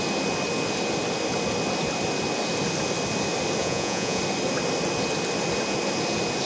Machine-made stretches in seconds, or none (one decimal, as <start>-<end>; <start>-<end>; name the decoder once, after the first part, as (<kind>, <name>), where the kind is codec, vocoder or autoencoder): 3.6-4.2 (vocoder, Vocos)